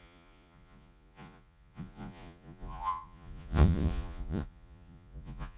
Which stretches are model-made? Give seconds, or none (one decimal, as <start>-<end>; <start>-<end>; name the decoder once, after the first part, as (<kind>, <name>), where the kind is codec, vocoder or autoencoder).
0.0-5.6 (vocoder, Vocos)